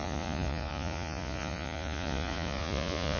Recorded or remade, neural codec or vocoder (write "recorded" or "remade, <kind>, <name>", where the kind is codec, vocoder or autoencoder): remade, vocoder, Vocos